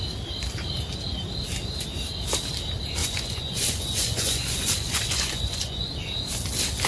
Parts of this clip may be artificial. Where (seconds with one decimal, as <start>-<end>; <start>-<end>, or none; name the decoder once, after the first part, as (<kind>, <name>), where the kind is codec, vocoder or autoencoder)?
3.0-5.9 (vocoder, Vocos)